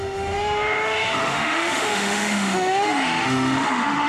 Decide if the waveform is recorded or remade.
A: remade